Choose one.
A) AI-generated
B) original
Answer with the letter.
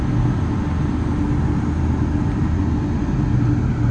B